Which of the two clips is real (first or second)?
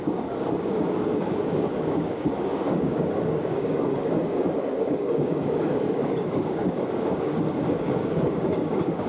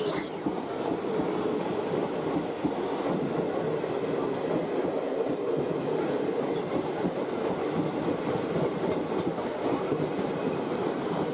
second